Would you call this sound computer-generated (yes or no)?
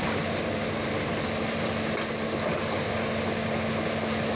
no